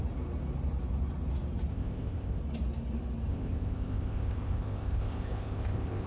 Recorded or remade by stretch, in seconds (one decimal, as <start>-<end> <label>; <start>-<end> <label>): 0.0-1.7 recorded; 1.7-2.4 remade; 2.4-3.3 recorded; 3.3-6.1 remade

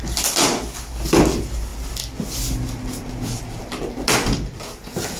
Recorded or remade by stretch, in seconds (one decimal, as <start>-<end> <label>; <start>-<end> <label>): 0.0-5.2 recorded

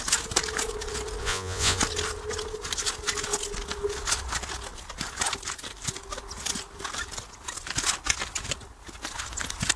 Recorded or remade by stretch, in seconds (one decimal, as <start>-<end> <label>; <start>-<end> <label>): 0.0-1.2 recorded; 1.2-1.8 remade; 1.8-9.8 recorded

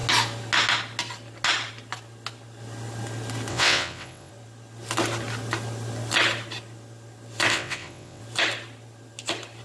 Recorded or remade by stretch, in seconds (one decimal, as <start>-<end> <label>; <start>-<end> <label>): 0.0-3.5 recorded; 3.5-4.3 remade; 4.3-7.5 recorded; 7.5-8.2 remade; 8.2-9.6 recorded

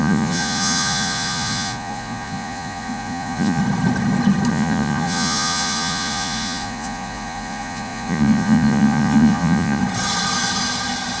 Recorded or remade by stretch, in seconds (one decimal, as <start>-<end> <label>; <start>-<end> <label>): 0.0-3.6 remade; 3.6-4.5 recorded; 4.5-9.8 remade; 9.8-11.2 recorded

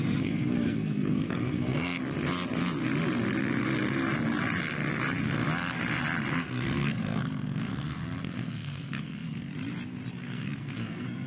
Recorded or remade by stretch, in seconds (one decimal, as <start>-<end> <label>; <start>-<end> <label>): 0.0-2.0 remade; 2.0-6.3 recorded; 6.3-9.5 remade; 9.5-10.1 recorded; 10.1-11.3 remade